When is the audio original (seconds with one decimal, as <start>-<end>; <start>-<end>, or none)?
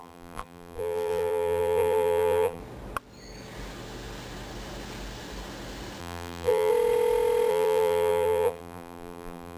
2.6-6.0; 6.7-7.5